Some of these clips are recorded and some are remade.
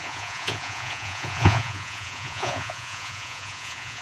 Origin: remade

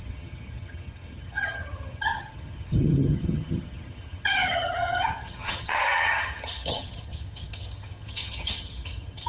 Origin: remade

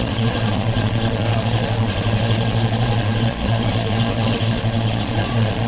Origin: remade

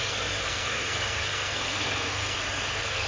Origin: remade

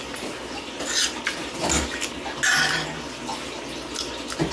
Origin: recorded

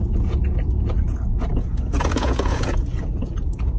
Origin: remade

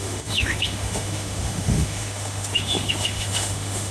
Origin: remade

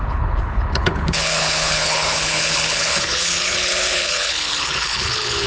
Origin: remade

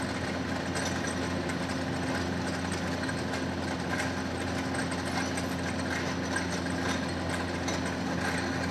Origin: recorded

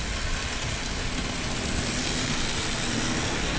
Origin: recorded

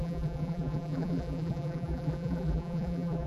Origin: remade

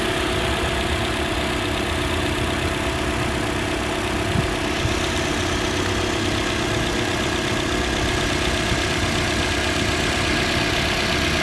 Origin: recorded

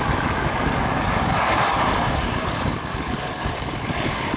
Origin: remade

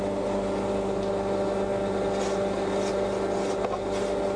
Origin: recorded